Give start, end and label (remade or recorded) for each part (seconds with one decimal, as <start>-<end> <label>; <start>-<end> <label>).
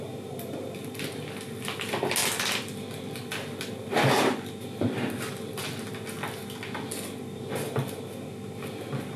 0.0-9.2 recorded